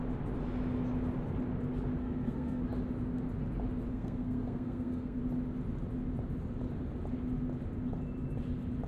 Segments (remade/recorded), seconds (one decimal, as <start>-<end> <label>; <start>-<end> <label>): 0.0-2.0 recorded; 2.0-2.6 remade; 2.6-3.9 recorded; 3.9-5.2 remade; 5.2-8.9 recorded